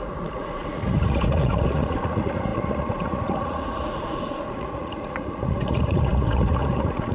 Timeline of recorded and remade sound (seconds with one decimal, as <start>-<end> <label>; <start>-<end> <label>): 0.0-7.1 remade